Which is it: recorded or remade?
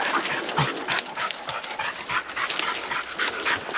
recorded